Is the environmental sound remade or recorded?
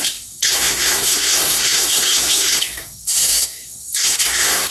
remade